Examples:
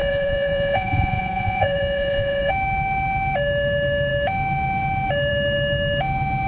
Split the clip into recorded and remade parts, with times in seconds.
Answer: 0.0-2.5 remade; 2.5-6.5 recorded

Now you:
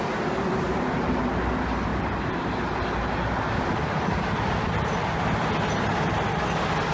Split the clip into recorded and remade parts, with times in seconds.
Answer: 0.0-6.9 recorded

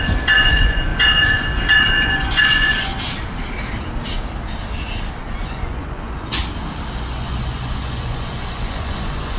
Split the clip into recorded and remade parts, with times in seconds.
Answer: 0.0-2.9 remade; 2.9-5.2 recorded; 5.2-6.4 remade; 6.4-7.1 recorded; 7.1-9.4 remade

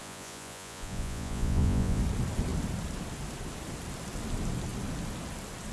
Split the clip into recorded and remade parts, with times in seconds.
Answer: 0.0-2.0 remade; 2.0-5.7 recorded